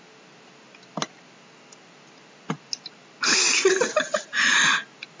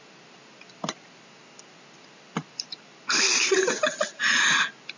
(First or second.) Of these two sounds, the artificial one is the second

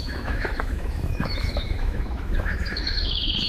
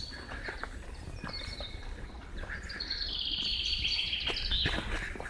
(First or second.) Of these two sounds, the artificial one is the first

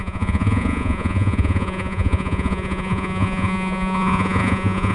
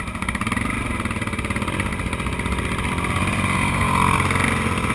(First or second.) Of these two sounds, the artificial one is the first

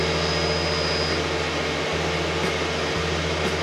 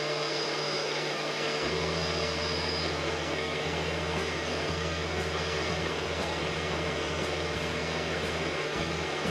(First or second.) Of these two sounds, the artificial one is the second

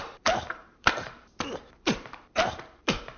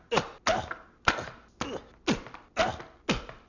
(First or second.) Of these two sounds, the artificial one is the first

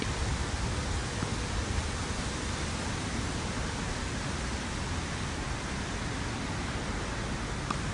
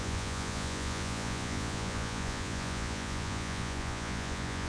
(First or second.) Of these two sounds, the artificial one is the second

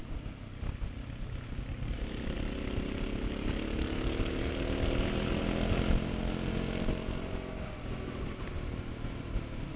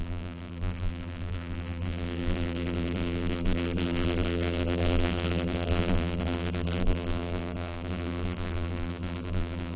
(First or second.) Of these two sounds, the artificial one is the second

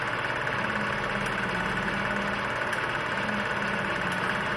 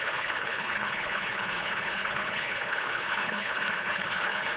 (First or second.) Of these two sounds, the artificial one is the second